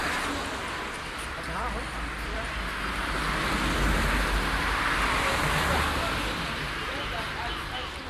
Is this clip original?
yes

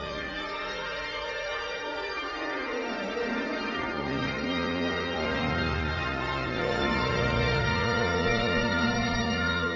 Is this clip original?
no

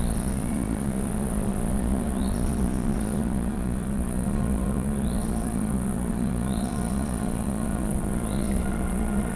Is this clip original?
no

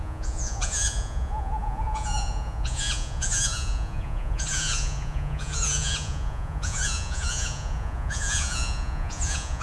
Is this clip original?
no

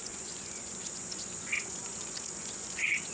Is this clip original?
no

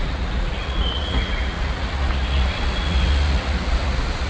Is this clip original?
no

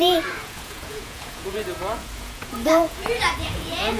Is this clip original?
no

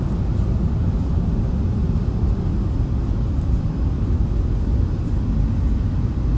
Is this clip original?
yes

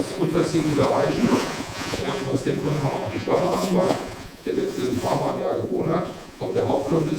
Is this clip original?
no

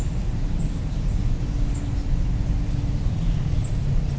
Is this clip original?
yes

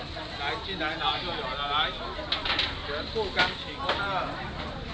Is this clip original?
yes